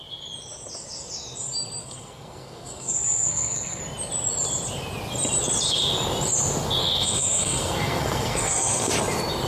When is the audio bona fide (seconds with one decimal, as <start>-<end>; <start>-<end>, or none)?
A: 0.0-1.8; 3.8-6.8; 8.9-9.5